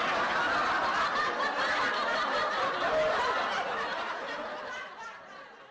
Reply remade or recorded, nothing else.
recorded